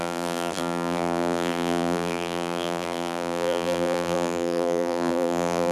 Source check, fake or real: fake